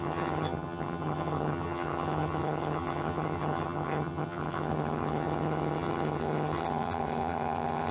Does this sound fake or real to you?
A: fake